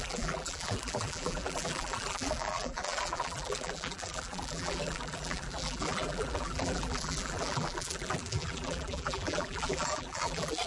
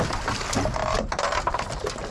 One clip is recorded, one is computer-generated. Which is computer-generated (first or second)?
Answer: first